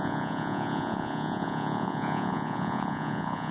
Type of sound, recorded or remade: remade